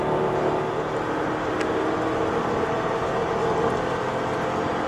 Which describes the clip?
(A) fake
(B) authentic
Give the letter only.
B